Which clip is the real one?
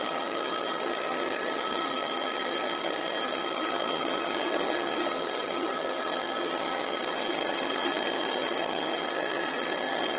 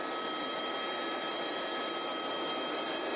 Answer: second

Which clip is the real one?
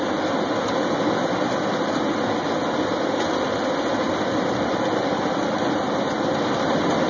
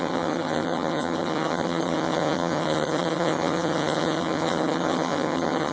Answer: first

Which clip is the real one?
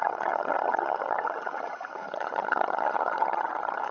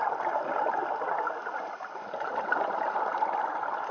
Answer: second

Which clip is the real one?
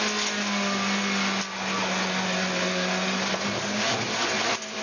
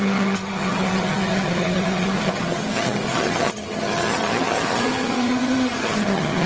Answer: first